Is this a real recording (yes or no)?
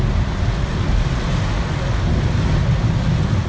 yes